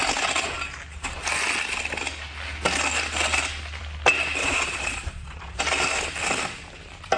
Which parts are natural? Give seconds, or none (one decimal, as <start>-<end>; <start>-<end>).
0.0-4.4; 5.6-7.2